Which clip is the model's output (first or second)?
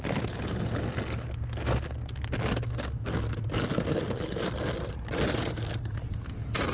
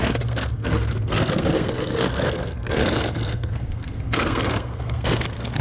second